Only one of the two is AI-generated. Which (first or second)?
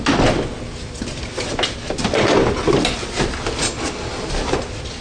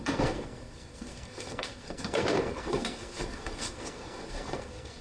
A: second